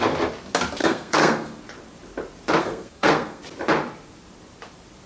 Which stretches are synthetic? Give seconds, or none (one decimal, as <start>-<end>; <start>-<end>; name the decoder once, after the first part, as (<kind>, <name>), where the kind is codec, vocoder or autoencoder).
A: 0.8-1.6 (codec, SNAC); 2.6-3.4